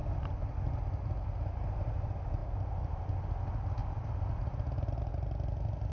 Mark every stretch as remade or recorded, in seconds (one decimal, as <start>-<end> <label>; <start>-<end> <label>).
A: 0.0-0.8 remade; 0.8-2.4 recorded; 2.4-3.2 remade; 3.2-3.8 recorded; 3.8-5.1 remade; 5.1-5.9 recorded